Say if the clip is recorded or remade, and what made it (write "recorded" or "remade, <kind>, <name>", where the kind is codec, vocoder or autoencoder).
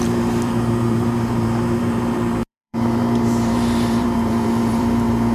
remade, vocoder, BigVGAN v2